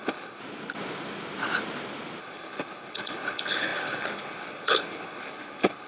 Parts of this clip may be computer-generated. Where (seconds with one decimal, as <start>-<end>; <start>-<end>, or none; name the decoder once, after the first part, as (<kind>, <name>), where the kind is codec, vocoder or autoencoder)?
0.0-0.4 (codec, HILCodec); 2.2-5.9